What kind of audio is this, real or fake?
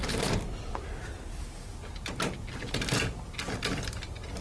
real